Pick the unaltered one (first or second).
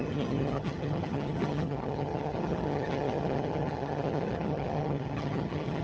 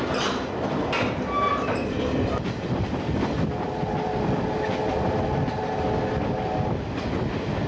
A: second